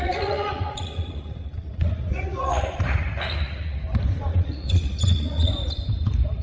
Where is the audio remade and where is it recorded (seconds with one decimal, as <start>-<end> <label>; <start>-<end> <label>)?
0.0-3.8 remade; 3.8-4.3 recorded; 4.3-5.5 remade; 5.5-6.4 recorded